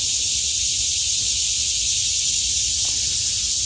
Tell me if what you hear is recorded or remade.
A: recorded